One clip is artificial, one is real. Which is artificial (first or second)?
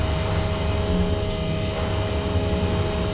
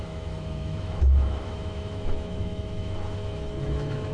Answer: second